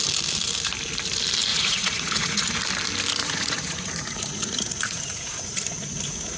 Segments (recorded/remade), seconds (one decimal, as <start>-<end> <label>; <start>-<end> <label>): 0.0-1.5 recorded; 1.5-2.6 remade; 2.6-3.2 recorded; 3.2-6.4 remade